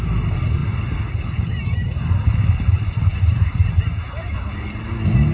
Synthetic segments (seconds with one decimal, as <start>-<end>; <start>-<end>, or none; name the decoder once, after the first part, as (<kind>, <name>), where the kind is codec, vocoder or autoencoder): none